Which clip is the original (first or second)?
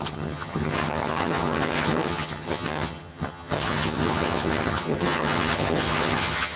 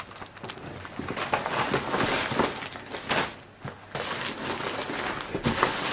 second